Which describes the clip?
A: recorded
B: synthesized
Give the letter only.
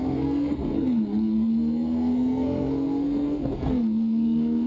B